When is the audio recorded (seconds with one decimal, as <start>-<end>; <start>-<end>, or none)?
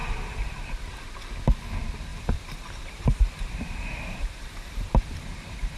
0.6-2.1